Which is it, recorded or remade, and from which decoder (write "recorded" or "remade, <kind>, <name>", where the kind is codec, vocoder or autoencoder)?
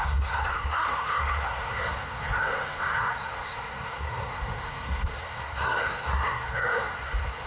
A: remade, codec, SNAC